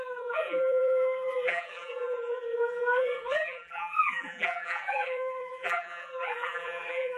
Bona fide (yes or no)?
no